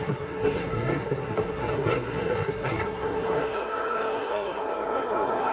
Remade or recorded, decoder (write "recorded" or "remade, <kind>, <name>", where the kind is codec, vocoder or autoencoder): remade, codec, SNAC